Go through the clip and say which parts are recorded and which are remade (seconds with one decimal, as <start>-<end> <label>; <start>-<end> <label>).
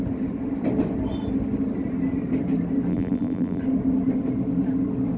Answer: 0.0-2.9 recorded; 2.9-3.6 remade; 3.6-5.2 recorded